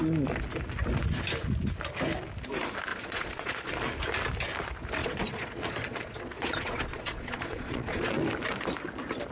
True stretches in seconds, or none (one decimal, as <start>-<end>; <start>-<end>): 0.0-2.9; 3.7-5.0; 8.2-9.3